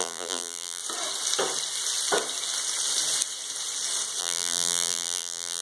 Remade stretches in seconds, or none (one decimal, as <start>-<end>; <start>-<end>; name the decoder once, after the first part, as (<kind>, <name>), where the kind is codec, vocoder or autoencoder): 0.0-0.8 (vocoder, BigVGAN v2); 4.2-5.6